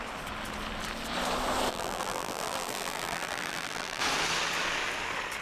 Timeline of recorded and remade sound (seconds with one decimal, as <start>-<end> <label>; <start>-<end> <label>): 0.0-1.7 recorded; 1.7-4.0 remade; 4.0-5.4 recorded